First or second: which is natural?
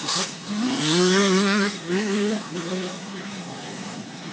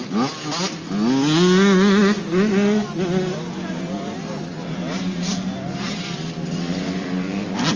second